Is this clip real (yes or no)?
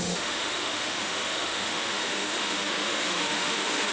no